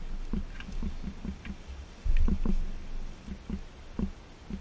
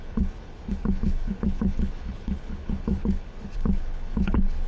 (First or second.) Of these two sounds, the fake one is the second